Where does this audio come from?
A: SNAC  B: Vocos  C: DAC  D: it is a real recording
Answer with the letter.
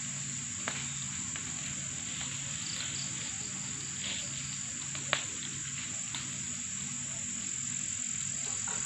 D